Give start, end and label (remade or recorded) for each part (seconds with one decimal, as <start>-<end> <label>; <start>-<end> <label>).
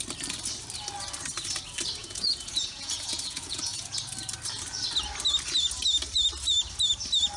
0.0-2.0 recorded; 2.0-4.0 remade; 4.0-7.4 recorded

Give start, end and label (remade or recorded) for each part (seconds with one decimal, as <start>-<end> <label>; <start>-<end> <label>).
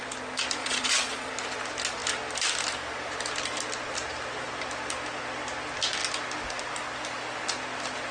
0.0-0.6 recorded; 0.6-1.3 remade; 1.3-8.1 recorded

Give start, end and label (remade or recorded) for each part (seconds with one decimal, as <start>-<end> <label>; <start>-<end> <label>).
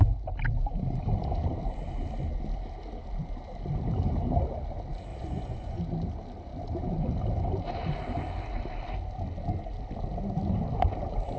0.0-5.1 recorded; 5.1-5.8 remade; 5.8-11.4 recorded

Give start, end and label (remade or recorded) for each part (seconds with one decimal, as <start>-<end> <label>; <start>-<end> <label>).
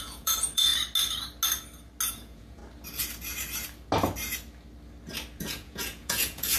0.0-0.7 remade; 0.7-2.1 recorded; 2.1-2.6 remade; 2.6-5.4 recorded; 5.4-6.6 remade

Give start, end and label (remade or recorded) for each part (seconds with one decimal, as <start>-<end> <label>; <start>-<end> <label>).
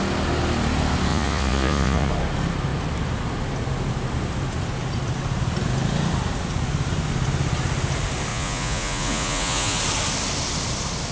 0.0-1.1 recorded; 1.1-2.1 remade; 2.1-8.3 recorded; 8.3-9.8 remade; 9.8-11.1 recorded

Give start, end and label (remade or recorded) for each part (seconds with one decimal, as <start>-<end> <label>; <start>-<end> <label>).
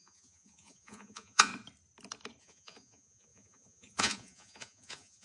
0.0-1.5 remade; 1.5-2.4 recorded; 2.4-5.2 remade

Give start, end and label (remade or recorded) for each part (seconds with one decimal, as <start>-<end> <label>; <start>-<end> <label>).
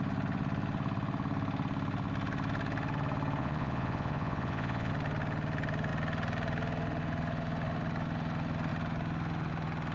0.0-3.4 recorded; 3.4-4.9 remade; 4.9-9.9 recorded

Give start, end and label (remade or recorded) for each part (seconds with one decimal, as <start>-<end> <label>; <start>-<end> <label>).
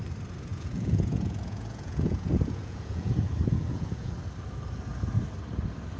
0.0-0.5 recorded; 0.5-4.1 remade; 4.1-6.0 recorded